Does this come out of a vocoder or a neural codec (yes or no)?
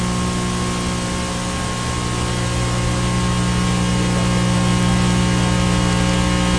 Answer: no